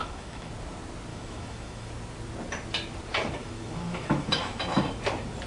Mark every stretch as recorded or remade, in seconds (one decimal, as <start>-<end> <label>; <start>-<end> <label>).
0.0-0.5 remade; 0.5-1.1 recorded; 1.1-1.9 remade; 1.9-3.4 recorded; 3.4-4.6 remade; 4.6-5.5 recorded